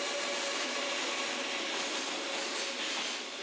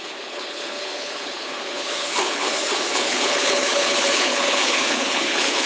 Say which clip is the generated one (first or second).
second